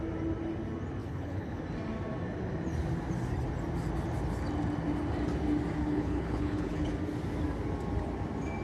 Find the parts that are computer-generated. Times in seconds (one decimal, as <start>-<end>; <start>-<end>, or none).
1.0-1.6; 5.8-6.9